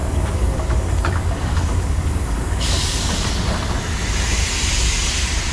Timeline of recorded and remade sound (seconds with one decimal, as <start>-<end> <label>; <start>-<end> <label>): 0.0-3.3 remade; 3.3-5.5 recorded